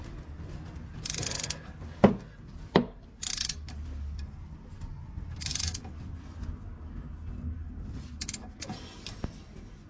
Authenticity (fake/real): real